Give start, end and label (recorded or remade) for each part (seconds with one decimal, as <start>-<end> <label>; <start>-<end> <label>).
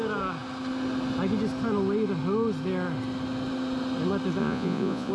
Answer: 0.0-4.4 recorded; 4.4-5.1 remade